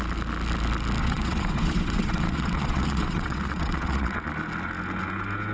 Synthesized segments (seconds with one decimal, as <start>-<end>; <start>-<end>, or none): 1.0-4.2